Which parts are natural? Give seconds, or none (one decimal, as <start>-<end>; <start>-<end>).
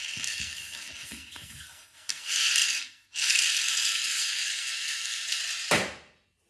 5.4-6.5